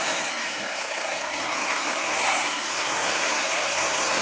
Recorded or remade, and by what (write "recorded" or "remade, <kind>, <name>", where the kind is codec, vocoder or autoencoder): remade, codec, SNAC